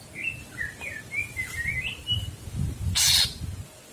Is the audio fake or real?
real